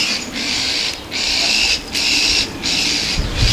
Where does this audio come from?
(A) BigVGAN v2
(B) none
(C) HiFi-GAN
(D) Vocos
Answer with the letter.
B